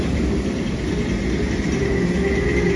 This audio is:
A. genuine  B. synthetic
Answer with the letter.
A